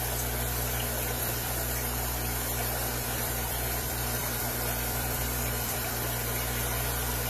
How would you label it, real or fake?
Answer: fake